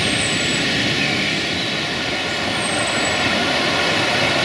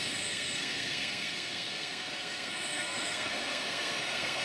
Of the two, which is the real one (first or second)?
first